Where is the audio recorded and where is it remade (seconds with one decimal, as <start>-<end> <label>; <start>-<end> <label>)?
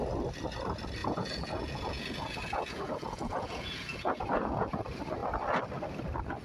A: 0.0-1.0 recorded; 1.0-4.8 remade; 4.8-6.4 recorded